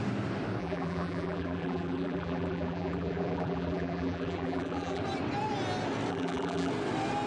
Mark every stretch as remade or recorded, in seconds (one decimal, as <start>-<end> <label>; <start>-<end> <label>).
0.0-0.6 recorded; 0.6-5.0 remade; 5.0-6.1 recorded; 6.1-6.7 remade; 6.7-7.3 recorded